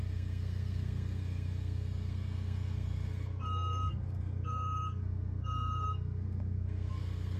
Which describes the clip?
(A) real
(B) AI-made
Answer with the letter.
B